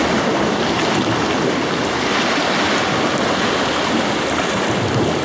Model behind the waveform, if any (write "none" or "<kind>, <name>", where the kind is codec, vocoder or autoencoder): none